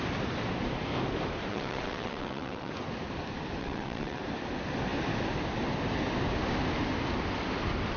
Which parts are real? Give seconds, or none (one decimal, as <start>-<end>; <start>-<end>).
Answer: 0.0-1.5; 2.7-3.6; 4.2-8.0